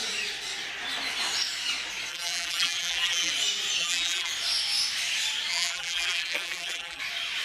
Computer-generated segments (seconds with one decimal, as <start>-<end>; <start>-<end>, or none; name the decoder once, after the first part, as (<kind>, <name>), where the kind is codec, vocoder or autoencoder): 2.1-3.3 (vocoder, BigVGAN v2); 3.8-4.3; 5.5-7.0